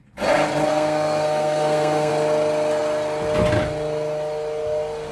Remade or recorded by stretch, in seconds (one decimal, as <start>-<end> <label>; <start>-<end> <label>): 0.0-0.7 recorded; 0.7-2.1 remade; 2.1-5.1 recorded